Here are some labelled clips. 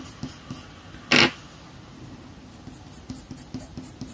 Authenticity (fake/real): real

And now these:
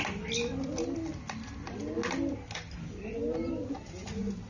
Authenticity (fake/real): real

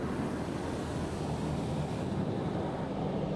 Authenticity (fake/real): real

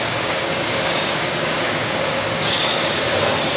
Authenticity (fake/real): fake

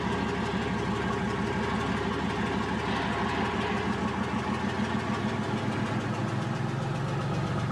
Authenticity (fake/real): real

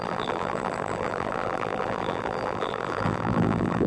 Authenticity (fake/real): fake